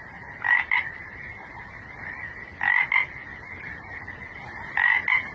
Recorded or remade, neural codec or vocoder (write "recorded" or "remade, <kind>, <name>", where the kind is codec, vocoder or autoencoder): recorded